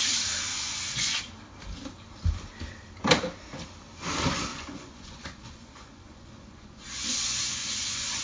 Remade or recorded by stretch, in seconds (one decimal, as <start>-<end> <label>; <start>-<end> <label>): 0.0-0.5 recorded; 0.5-1.2 remade; 1.2-4.5 recorded; 4.5-8.2 remade